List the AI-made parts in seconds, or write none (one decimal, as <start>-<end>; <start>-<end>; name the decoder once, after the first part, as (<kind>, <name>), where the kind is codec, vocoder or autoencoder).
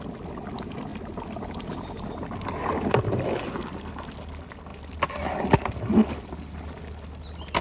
none